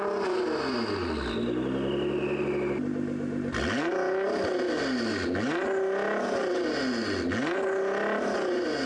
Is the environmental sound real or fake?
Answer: real